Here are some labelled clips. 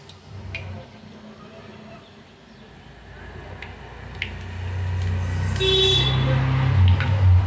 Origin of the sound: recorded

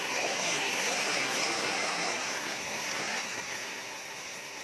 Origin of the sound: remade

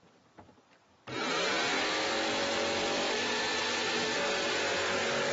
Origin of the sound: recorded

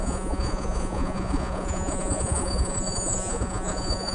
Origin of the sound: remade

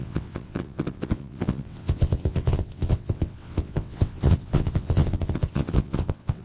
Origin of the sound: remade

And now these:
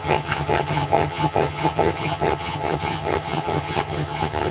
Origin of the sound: remade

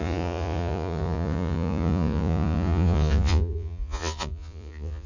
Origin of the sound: remade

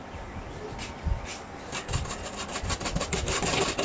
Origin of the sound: recorded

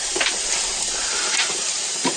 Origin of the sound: recorded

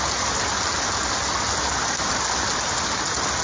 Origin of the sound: recorded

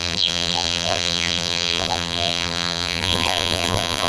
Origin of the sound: remade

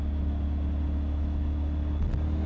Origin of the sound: recorded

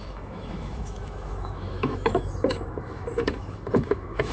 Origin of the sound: remade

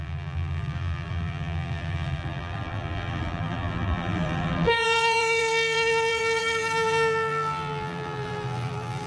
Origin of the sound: remade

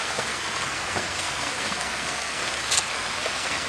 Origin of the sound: remade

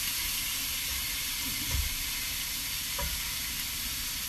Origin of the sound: recorded